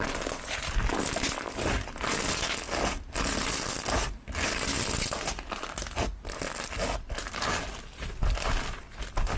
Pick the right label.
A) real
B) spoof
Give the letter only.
A